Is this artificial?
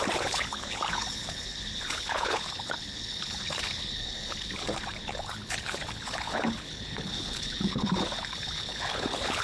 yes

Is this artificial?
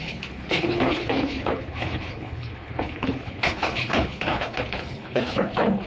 yes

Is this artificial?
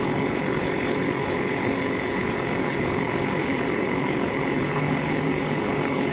yes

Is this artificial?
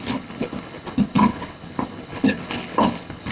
yes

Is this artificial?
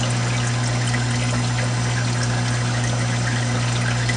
no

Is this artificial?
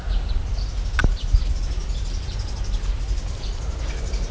no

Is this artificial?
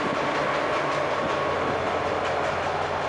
no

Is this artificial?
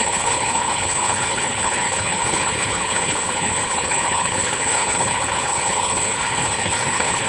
yes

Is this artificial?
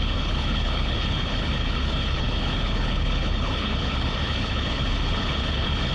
yes